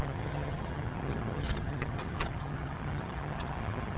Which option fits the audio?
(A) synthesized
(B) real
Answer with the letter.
A